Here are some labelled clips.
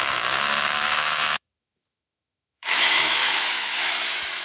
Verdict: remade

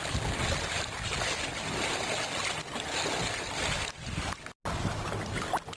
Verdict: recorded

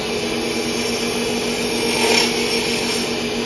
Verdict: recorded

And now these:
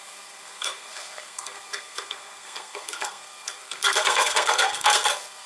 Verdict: remade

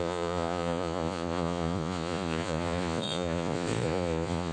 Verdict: remade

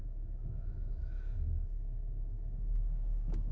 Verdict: remade